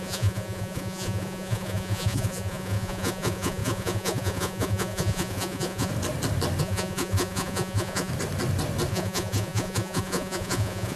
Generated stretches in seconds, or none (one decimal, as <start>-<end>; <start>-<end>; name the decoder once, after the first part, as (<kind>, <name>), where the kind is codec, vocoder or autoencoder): 0.0-5.9 (vocoder, Vocos); 6.6-8.1; 8.9-11.0